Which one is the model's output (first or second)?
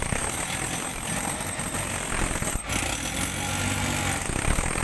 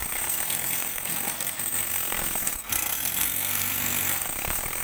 second